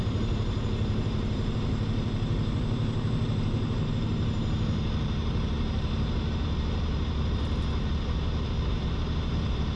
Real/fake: fake